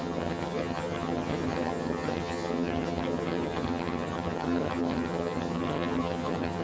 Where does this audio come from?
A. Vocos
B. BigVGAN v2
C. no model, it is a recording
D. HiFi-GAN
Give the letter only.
D